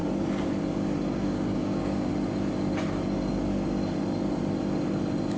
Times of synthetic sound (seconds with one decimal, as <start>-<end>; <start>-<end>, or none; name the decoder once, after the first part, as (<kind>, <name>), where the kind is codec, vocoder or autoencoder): 1.1-2.1 (codec, DAC)